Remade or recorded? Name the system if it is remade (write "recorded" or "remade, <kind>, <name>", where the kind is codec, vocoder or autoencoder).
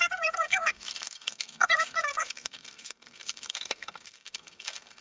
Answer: remade, codec, SNAC